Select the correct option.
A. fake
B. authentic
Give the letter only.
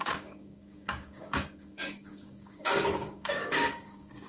A